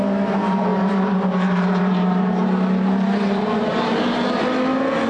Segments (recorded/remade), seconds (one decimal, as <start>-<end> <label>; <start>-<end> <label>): 0.0-0.7 recorded; 0.7-3.8 remade; 3.8-5.1 recorded